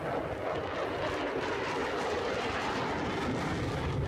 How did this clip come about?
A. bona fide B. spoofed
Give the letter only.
A